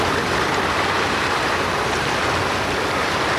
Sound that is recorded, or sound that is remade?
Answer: recorded